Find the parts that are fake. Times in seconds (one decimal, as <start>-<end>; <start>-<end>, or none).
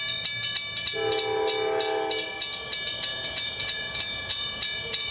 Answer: 3.1-5.1